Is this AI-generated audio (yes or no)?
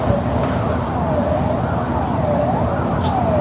no